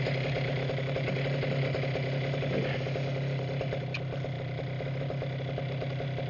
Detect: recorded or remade recorded